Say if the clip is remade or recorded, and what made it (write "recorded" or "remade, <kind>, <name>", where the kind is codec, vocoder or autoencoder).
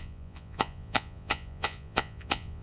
remade, vocoder, Vocos